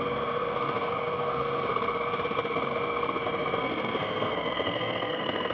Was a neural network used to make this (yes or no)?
yes